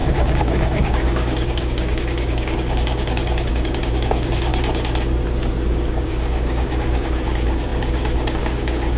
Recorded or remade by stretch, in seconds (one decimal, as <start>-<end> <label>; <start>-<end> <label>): 0.0-4.5 remade; 4.5-5.7 recorded; 5.7-9.0 remade